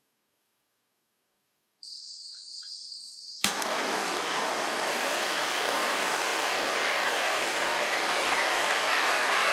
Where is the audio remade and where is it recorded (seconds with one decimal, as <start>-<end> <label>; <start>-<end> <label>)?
0.0-9.5 remade

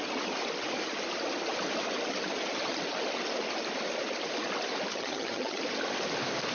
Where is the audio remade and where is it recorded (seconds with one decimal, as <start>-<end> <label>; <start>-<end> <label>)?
0.0-4.9 recorded; 4.9-5.6 remade; 5.6-6.5 recorded

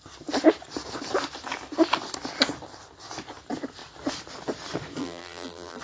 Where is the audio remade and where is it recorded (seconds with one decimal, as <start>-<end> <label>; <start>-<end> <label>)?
0.0-5.0 recorded; 5.0-5.8 remade

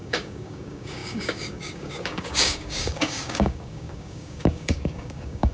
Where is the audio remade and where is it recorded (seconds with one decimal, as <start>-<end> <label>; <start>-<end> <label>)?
0.0-5.5 remade

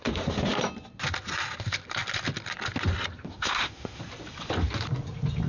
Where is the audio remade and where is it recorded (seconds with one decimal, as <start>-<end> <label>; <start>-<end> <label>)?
0.0-3.3 recorded; 3.3-4.0 remade; 4.0-5.5 recorded

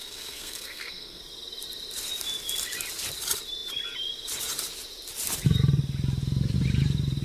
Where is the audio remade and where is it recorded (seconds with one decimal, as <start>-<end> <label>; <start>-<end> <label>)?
0.0-1.2 remade; 1.2-7.2 recorded

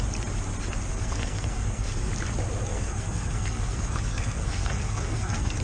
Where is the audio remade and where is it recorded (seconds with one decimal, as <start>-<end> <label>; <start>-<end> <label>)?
0.0-0.9 recorded; 0.9-2.1 remade; 2.1-2.7 recorded; 2.7-5.6 remade